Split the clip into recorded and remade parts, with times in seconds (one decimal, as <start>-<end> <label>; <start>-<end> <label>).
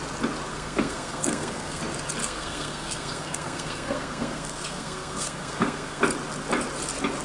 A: 0.0-0.5 recorded; 0.5-1.8 remade; 1.8-2.2 recorded; 2.2-6.0 remade; 6.0-7.2 recorded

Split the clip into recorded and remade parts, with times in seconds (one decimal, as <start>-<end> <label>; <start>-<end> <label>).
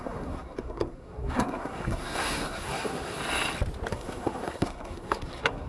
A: 0.0-3.2 remade; 3.2-3.9 recorded; 3.9-5.7 remade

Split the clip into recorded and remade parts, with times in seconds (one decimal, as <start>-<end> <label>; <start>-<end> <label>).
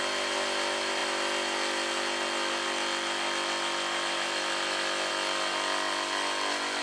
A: 0.0-6.8 recorded